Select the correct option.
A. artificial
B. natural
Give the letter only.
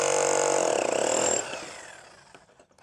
B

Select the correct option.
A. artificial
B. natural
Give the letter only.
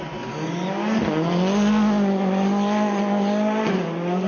B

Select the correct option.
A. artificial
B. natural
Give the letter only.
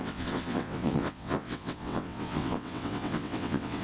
A